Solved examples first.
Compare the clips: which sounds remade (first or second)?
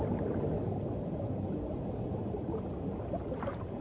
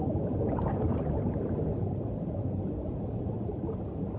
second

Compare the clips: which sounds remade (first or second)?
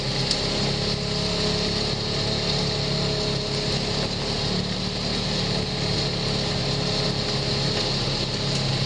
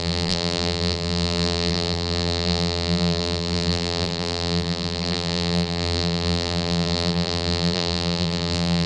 second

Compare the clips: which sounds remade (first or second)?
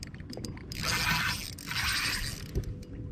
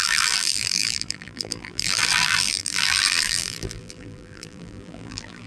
second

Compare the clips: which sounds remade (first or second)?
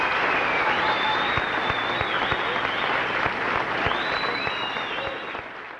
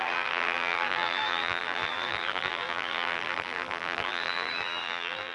second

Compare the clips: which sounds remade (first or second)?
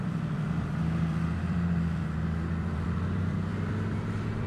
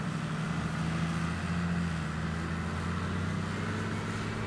first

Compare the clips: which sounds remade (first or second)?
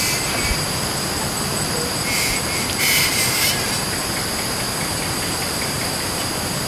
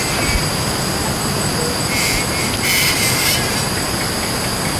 first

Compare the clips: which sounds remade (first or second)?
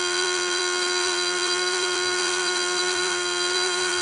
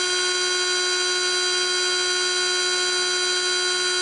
first